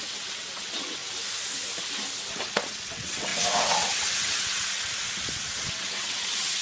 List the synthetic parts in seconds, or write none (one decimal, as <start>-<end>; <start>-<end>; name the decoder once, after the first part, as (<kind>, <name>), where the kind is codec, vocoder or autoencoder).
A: 0.0-1.0 (vocoder, WaveNeXt); 2.4-6.6